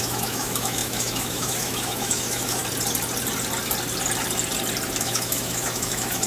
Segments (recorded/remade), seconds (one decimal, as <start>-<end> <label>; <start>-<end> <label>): 0.0-2.6 remade; 2.6-5.0 recorded; 5.0-6.3 remade